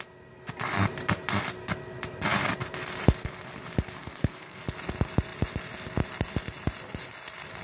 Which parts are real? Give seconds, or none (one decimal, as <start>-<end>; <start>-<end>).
0.0-4.0; 4.6-7.6